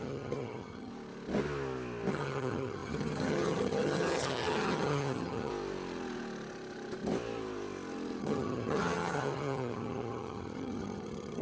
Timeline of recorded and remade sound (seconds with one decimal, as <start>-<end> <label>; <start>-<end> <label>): 0.0-0.9 remade; 0.9-2.1 recorded; 2.1-5.5 remade; 5.5-8.2 recorded; 8.2-11.4 remade